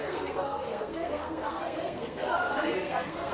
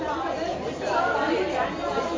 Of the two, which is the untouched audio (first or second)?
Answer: second